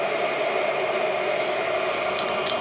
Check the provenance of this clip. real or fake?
real